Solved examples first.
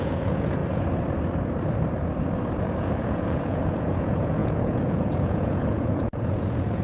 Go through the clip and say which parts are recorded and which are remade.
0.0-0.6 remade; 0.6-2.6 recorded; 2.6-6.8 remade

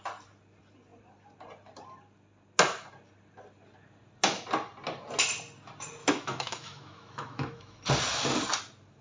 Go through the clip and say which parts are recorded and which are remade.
0.0-6.0 recorded; 6.0-7.8 remade; 7.8-9.0 recorded